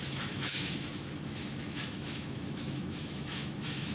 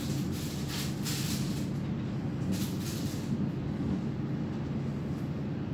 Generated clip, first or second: first